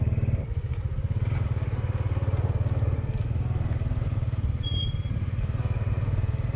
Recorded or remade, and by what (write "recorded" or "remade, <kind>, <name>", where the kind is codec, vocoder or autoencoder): recorded